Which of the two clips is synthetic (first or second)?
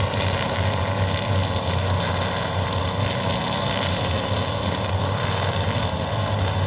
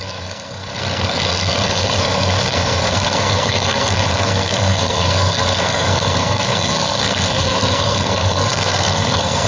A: second